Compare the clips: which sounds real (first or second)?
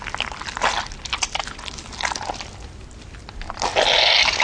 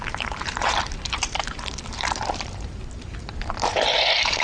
first